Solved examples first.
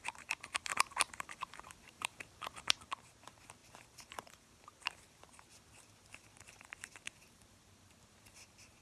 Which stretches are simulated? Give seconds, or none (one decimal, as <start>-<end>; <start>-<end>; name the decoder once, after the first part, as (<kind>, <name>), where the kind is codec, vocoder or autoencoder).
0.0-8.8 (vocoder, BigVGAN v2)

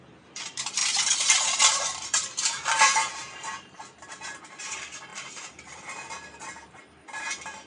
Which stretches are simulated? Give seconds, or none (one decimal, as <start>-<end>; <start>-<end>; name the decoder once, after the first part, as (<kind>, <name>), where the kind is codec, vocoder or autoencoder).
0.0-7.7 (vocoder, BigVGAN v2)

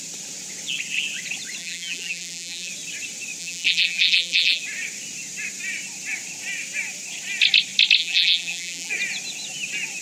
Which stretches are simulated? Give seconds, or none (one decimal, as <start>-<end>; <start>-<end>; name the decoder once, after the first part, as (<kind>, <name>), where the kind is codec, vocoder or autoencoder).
1.6-2.7 (vocoder, BigVGAN v2); 3.4-4.6; 8.0-8.9

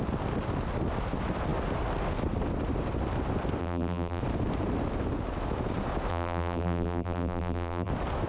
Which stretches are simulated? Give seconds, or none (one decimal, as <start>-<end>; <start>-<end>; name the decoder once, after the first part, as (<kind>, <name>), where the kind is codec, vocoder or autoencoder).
3.6-4.2 (vocoder, BigVGAN v2); 6.1-7.9

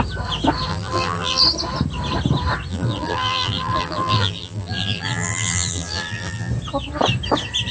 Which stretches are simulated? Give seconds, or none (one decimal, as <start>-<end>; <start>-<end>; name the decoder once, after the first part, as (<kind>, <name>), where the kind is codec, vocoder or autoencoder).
0.7-1.4 (vocoder, BigVGAN v2); 2.7-6.5